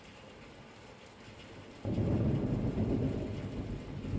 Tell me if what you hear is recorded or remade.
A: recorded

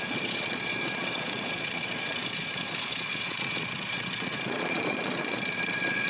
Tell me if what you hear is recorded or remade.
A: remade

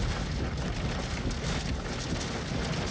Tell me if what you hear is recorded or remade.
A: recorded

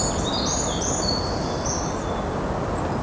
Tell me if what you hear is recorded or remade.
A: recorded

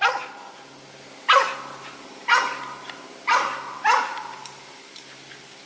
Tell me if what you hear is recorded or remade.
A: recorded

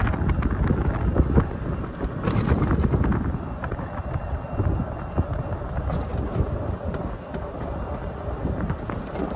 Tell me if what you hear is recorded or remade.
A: recorded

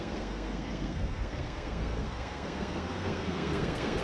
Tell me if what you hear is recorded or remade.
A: remade